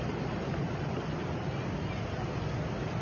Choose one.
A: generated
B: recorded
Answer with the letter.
B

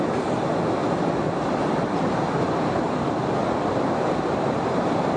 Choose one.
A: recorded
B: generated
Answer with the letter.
B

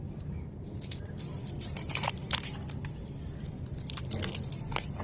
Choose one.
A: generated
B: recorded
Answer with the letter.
B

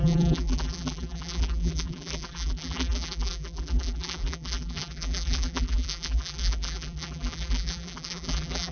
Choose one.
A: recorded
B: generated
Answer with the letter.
B